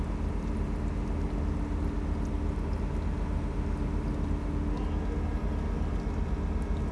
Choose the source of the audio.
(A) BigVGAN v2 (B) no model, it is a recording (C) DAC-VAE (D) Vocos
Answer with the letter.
B